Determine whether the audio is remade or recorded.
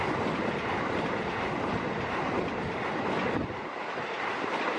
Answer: recorded